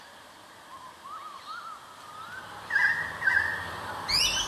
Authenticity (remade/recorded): recorded